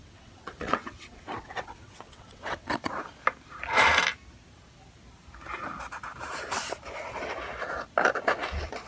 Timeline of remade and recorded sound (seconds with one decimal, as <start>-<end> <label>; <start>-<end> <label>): 0.0-2.9 remade; 2.9-8.9 recorded